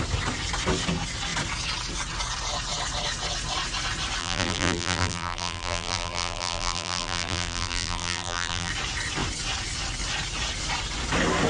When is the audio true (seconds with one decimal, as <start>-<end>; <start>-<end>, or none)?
0.0-4.2; 8.7-11.5